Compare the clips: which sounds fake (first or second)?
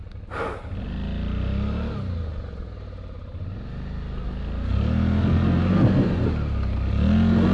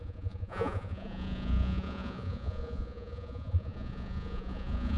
second